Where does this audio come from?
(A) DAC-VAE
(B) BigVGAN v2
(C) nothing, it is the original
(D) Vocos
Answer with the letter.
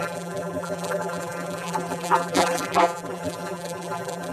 B